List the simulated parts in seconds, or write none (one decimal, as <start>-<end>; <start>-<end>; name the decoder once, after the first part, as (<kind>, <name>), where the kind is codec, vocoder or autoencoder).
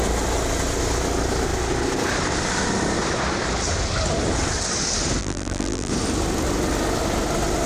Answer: 5.2-5.9 (vocoder, BigVGAN v2)